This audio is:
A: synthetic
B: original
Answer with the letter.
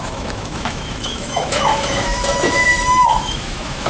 A